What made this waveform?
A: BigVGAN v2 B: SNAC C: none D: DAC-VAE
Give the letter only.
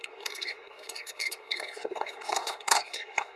B